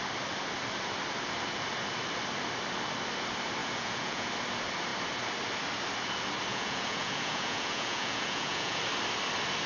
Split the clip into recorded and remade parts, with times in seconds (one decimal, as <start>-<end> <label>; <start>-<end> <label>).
0.0-3.6 recorded; 3.6-4.3 remade; 4.3-6.5 recorded; 6.5-8.8 remade; 8.8-9.7 recorded